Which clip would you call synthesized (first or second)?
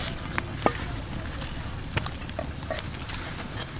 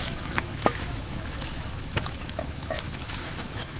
second